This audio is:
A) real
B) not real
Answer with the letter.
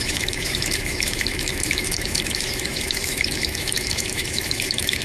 B